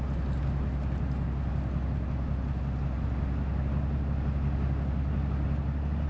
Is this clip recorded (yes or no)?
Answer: yes